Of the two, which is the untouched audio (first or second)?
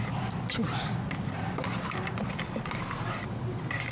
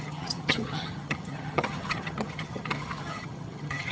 first